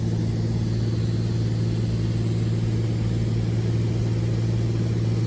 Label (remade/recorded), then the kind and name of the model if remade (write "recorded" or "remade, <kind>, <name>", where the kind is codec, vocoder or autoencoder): recorded